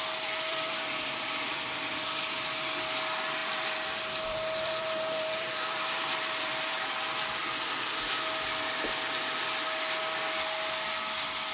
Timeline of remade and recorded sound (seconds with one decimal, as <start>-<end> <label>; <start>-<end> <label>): 0.0-0.5 recorded; 0.5-2.5 remade; 2.5-3.4 recorded; 3.4-6.8 remade; 6.8-11.5 recorded